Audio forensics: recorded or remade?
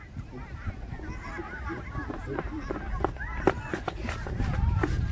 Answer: recorded